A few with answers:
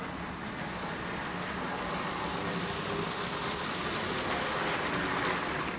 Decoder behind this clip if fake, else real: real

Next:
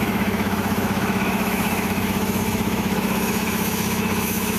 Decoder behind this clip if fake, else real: fake, autoencoder, DAC-VAE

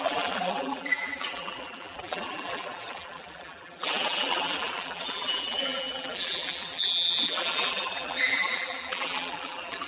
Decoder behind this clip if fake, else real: fake, vocoder, BigVGAN v2